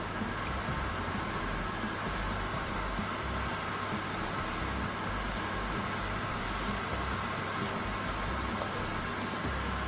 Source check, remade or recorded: recorded